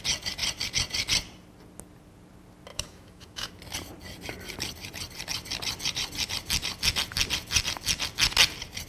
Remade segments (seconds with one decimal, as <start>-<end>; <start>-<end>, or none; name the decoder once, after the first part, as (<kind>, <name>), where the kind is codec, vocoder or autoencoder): 2.7-3.5 (autoencoder, DAC-VAE)